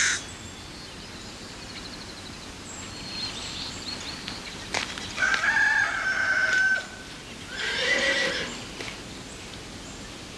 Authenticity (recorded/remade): remade